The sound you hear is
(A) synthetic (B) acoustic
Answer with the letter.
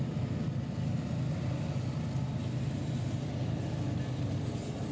B